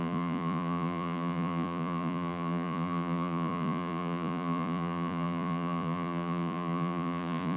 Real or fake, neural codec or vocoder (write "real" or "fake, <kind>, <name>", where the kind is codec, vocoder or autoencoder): fake, vocoder, Vocos